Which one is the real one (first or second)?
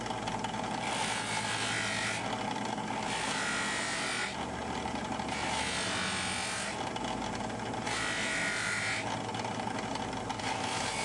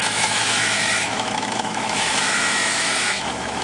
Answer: first